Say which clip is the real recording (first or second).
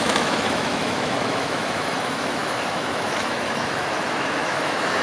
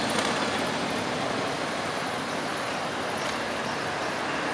second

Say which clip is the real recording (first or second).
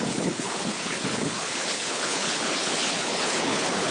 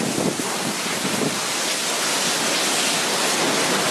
second